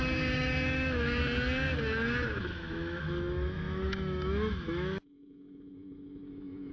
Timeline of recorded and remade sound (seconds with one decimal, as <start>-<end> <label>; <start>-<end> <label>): 0.0-1.2 remade; 1.2-2.3 recorded; 2.3-6.7 remade